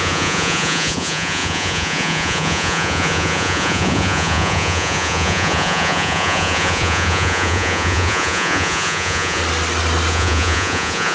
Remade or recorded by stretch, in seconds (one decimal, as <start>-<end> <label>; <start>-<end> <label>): 0.0-9.4 remade; 9.4-10.1 recorded; 10.1-11.1 remade

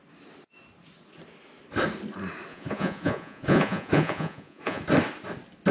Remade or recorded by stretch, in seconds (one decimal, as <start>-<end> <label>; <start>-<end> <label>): 0.0-2.5 recorded; 2.5-4.8 remade; 4.8-5.7 recorded